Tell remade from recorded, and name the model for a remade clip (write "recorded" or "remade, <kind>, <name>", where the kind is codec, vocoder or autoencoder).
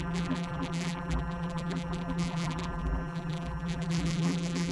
remade, vocoder, BigVGAN v2